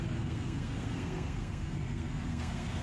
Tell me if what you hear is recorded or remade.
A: remade